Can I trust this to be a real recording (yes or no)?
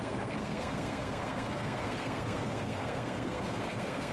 no